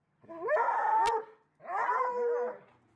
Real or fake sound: real